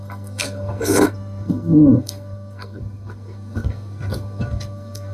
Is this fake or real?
fake